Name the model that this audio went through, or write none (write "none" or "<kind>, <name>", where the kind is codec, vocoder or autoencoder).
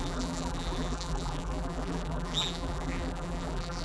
vocoder, BigVGAN v2